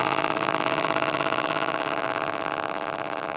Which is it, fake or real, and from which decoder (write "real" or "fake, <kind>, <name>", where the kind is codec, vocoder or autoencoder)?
fake, vocoder, BigVGAN v2